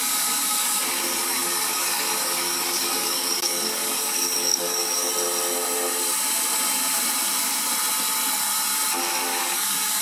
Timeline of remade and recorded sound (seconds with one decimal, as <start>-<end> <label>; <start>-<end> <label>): 0.0-5.1 remade; 5.1-9.4 recorded; 9.4-10.0 remade